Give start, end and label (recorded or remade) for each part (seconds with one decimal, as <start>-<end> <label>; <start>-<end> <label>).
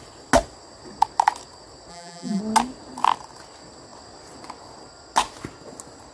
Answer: 0.0-1.9 recorded; 1.9-2.4 remade; 2.4-6.1 recorded